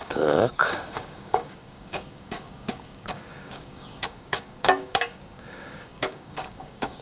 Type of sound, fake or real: fake